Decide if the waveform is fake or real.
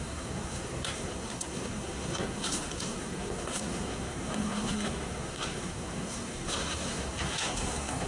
fake